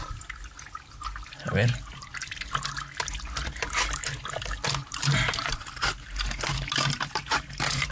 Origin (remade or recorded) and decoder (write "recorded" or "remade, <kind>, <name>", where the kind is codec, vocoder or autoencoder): recorded